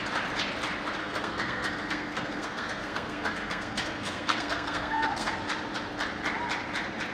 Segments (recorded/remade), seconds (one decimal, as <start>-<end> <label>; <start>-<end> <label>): 0.0-1.0 recorded; 1.0-5.3 remade; 5.3-7.1 recorded